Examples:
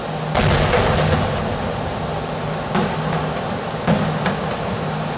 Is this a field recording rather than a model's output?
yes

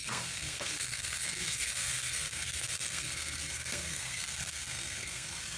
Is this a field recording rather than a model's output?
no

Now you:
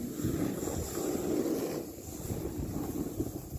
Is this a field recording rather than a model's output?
yes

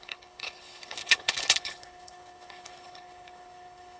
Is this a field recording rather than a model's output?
no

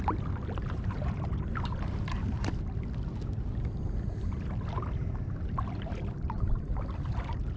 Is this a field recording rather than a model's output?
yes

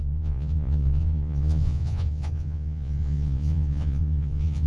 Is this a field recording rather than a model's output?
no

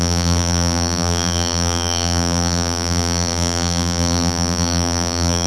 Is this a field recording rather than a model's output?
no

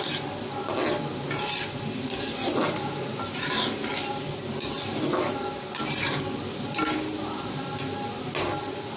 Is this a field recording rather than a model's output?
yes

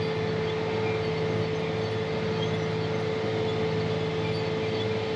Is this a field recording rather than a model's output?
yes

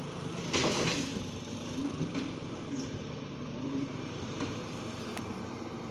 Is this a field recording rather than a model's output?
no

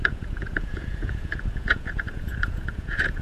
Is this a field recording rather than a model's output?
no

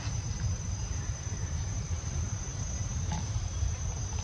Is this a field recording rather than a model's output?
no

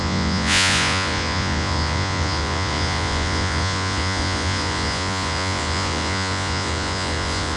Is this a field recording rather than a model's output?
no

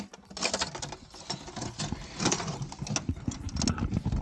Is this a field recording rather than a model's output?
yes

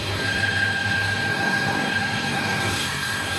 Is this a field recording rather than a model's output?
no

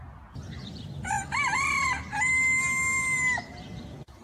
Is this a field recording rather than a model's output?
yes